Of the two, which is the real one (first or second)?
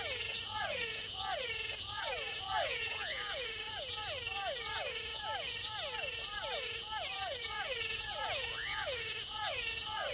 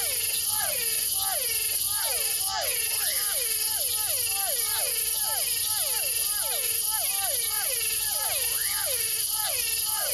second